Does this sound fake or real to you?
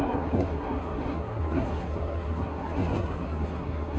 fake